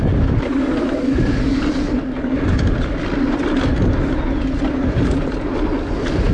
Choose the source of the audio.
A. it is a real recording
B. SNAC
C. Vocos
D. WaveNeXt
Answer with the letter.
A